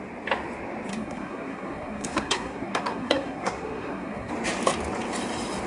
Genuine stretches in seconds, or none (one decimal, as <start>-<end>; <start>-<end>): 0.0-0.9; 4.3-5.7